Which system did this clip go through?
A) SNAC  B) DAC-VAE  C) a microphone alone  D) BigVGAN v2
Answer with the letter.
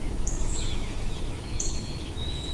B